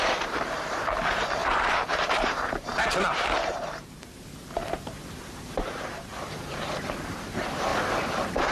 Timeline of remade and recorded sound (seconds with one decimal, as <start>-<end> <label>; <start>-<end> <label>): 0.0-7.7 remade; 7.7-8.5 recorded